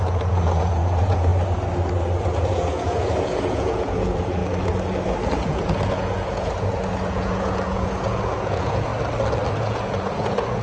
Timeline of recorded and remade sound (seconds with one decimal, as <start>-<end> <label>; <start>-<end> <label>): 0.0-1.3 remade; 1.3-2.2 recorded; 2.2-4.4 remade; 4.4-5.3 recorded; 5.3-8.9 remade; 8.9-9.5 recorded; 9.5-10.6 remade